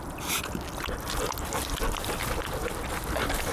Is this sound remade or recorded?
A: recorded